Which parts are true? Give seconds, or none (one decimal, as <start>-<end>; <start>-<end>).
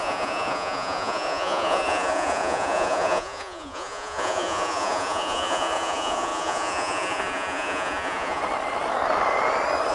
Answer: 8.4-9.9